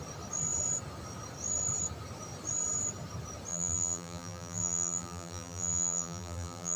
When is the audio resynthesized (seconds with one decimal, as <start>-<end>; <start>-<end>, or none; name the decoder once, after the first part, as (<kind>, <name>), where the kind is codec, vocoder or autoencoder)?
3.5-6.8 (vocoder, BigVGAN v2)